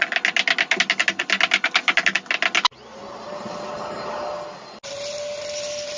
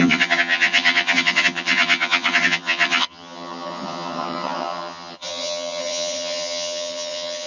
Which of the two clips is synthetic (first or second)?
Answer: second